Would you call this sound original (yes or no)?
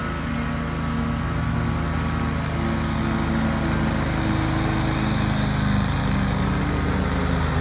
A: yes